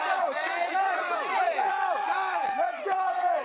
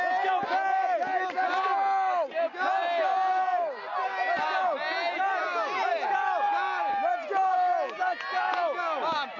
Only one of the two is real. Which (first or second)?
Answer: second